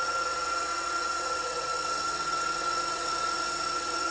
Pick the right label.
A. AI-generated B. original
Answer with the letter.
A